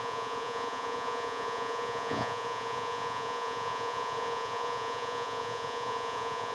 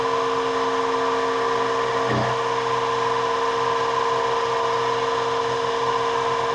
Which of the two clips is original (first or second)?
second